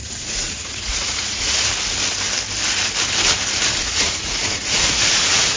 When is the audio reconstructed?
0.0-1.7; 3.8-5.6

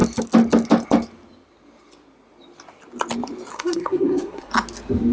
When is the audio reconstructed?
3.5-4.5

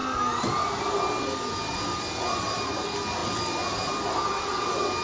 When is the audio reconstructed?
none

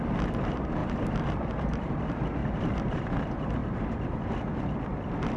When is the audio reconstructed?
2.4-3.1; 3.6-4.2

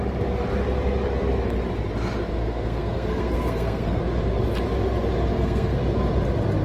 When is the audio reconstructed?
2.3-4.0; 5.3-5.8

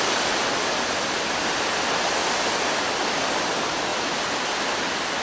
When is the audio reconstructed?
none

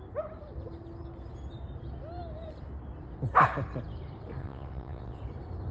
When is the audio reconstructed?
4.4-5.2

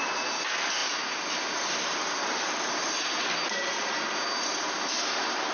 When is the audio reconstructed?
none